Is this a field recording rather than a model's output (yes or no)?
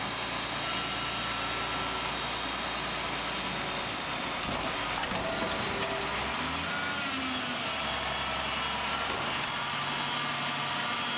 yes